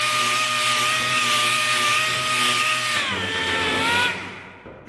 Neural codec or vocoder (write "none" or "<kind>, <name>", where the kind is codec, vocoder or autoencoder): none